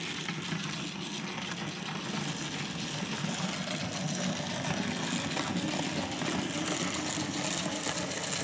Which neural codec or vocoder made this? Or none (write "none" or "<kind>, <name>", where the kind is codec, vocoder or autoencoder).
none